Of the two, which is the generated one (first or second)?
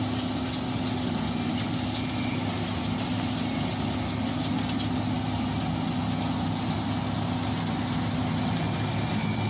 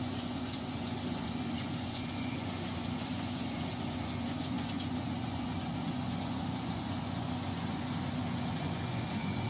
second